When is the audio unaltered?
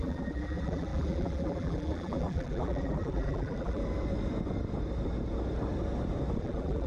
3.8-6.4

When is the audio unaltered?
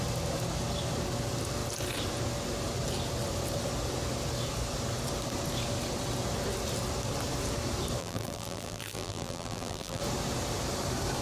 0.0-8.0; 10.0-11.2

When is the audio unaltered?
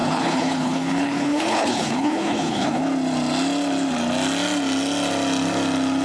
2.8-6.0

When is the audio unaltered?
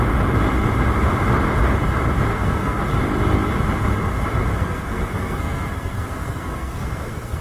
0.0-2.3; 2.8-4.5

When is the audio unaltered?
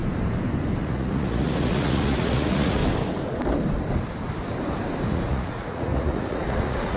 0.0-0.8; 2.8-5.1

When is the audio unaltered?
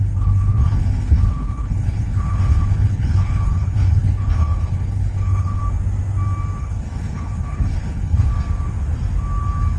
5.6-6.6; 8.3-9.8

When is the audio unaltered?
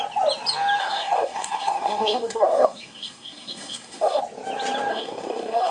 0.0-0.8; 4.2-4.9